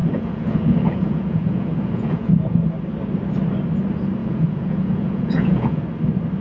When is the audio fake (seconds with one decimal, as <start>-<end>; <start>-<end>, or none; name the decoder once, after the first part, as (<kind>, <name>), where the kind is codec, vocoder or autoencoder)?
0.0-2.7 (vocoder, Vocos); 4.2-5.8